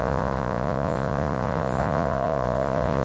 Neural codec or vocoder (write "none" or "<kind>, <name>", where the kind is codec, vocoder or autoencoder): vocoder, Vocos